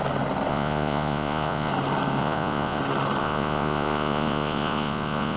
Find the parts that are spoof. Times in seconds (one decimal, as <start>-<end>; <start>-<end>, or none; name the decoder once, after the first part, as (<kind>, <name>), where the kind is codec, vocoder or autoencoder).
0.5-1.7 (vocoder, Vocos); 2.2-2.8; 3.2-5.4